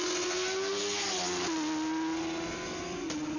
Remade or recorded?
recorded